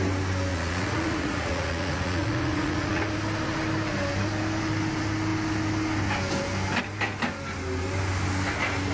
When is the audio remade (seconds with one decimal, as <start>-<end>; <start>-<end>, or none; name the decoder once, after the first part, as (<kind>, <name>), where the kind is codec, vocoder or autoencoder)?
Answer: 0.5-3.0 (vocoder, Vocos)

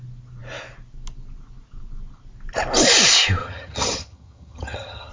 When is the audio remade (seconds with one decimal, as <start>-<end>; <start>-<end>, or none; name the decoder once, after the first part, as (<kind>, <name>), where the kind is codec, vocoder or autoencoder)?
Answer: 3.4-5.1 (vocoder, HiFi-GAN)

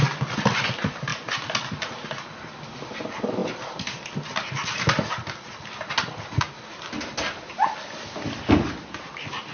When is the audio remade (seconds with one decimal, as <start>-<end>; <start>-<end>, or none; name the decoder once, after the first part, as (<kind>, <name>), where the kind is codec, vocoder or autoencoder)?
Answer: none

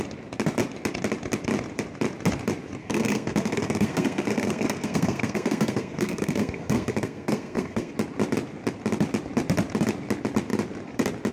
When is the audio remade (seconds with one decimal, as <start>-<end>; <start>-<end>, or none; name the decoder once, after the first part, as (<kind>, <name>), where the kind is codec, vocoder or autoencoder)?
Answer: 2.8-7.9 (codec, SNAC)

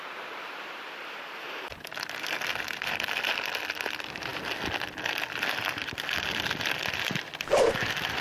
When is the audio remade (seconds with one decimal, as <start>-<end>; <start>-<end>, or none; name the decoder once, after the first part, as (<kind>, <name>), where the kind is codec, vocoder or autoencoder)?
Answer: none

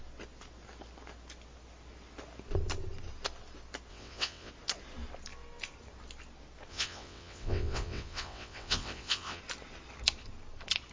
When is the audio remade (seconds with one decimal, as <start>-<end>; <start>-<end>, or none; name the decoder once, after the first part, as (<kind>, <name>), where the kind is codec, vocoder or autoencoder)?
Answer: 3.9-4.5 (vocoder, WaveNeXt); 6.7-9.4

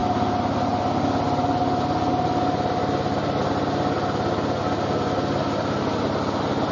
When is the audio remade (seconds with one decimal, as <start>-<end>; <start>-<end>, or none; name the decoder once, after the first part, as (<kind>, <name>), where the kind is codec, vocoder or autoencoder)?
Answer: none